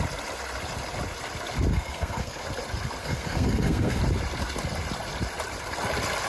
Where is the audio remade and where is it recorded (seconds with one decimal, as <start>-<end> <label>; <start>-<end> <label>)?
0.0-1.7 recorded; 1.7-2.4 remade; 2.4-3.0 recorded; 3.0-4.0 remade; 4.0-6.3 recorded

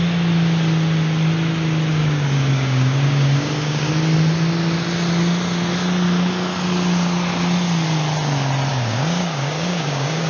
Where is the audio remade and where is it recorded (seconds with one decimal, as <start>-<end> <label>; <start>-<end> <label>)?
0.0-1.9 recorded; 1.9-3.9 remade; 3.9-8.7 recorded; 8.7-10.3 remade

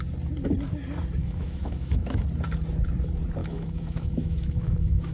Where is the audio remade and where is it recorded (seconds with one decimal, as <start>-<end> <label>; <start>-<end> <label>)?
0.0-1.2 recorded; 1.2-2.2 remade; 2.2-3.4 recorded; 3.4-5.1 remade